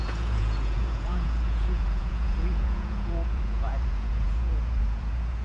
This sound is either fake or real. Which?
fake